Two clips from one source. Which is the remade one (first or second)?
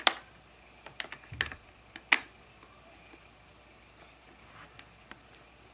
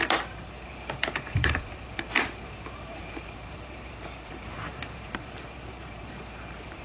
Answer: second